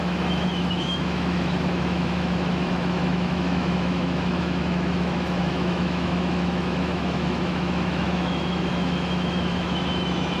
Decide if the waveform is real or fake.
fake